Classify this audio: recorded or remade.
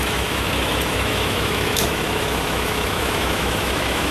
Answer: remade